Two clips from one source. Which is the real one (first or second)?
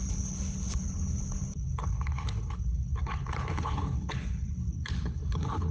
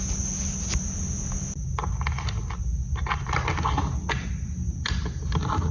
second